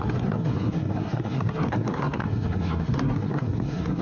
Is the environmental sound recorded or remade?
remade